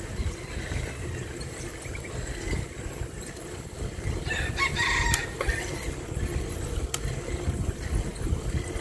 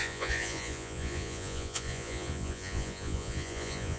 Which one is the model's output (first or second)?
second